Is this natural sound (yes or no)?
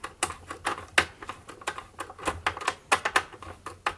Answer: yes